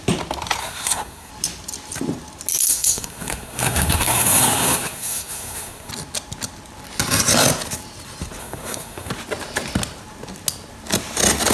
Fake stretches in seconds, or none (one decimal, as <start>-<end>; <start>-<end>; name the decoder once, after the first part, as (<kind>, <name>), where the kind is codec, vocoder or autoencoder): 0.6-1.3 (codec, SNAC); 2.6-5.9; 8.4-9.1